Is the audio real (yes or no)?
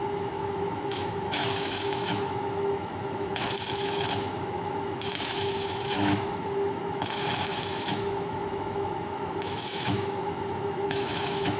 no